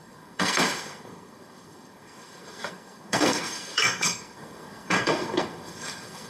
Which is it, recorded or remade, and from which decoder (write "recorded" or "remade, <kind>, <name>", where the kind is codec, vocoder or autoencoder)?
remade, codec, SNAC